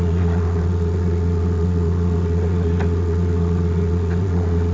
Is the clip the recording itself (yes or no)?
no